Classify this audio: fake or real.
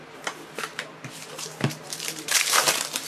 fake